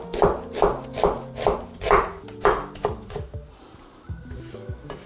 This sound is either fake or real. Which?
real